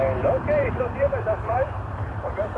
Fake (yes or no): yes